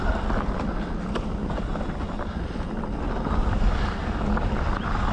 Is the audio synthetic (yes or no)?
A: no